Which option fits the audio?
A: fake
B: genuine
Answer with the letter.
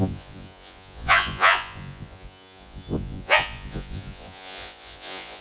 A